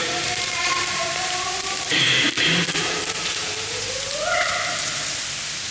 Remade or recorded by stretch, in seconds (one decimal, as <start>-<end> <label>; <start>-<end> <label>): 0.0-3.4 remade; 3.4-5.7 recorded